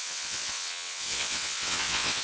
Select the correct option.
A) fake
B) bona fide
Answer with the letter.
A